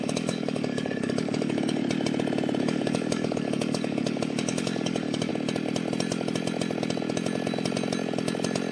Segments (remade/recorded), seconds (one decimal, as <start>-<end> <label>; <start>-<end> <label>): 0.0-1.8 remade; 1.8-2.6 recorded; 2.6-5.3 remade; 5.3-8.7 recorded